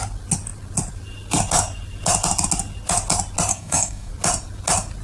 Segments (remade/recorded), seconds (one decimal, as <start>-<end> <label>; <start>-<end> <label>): 0.0-3.5 recorded; 3.5-4.1 remade; 4.1-5.0 recorded